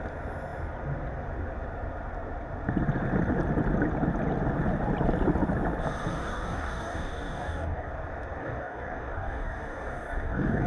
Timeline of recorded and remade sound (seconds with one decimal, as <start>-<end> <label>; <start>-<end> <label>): 0.0-6.1 recorded; 6.1-7.9 remade; 7.9-8.4 recorded; 8.4-10.7 remade